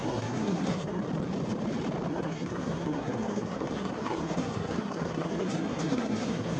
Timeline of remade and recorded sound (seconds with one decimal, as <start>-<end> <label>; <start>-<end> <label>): 0.0-1.0 remade; 1.0-2.1 recorded; 2.1-6.6 remade